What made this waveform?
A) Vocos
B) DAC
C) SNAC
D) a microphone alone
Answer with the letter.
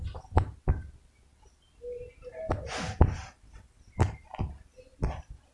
D